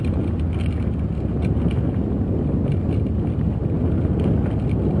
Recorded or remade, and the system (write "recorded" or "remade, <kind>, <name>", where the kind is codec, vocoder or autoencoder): recorded